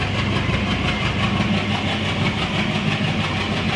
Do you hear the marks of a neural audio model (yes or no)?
no